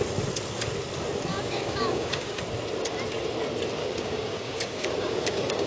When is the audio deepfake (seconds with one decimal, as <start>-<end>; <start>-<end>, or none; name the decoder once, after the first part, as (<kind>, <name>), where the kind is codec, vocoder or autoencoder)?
1.3-2.4 (codec, DAC); 3.8-5.7